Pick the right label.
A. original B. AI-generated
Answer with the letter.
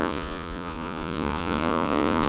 B